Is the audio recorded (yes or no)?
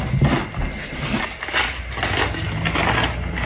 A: yes